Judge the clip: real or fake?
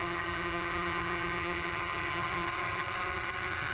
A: fake